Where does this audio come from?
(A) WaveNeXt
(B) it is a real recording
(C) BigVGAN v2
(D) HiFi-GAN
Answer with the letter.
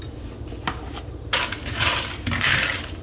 C